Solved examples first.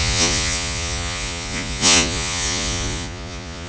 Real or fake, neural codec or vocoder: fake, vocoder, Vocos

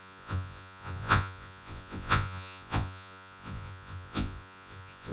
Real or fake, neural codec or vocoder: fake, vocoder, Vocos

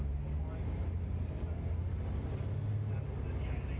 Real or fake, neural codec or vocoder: real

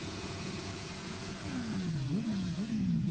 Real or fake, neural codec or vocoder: fake, vocoder, Vocos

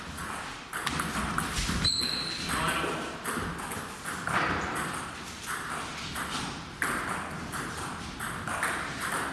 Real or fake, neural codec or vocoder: real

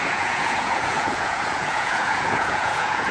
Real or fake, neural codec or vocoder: fake, vocoder, Vocos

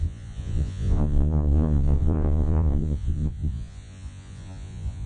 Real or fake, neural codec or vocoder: fake, vocoder, Vocos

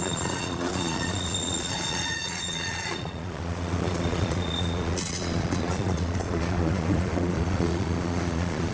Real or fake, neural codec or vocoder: fake, vocoder, Vocos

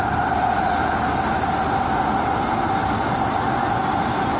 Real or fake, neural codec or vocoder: real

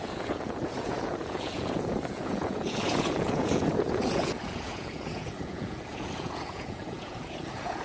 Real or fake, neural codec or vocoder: fake, vocoder, Vocos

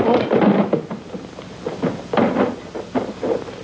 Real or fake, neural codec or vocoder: real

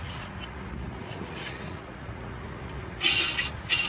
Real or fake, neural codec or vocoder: fake, vocoder, Vocos